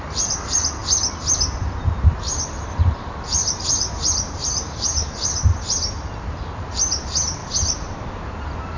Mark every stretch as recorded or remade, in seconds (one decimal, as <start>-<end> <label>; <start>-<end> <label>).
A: 0.0-0.8 remade; 0.8-1.8 recorded; 1.8-7.4 remade; 7.4-8.4 recorded; 8.4-8.8 remade